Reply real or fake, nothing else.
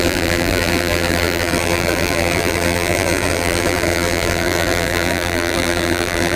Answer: fake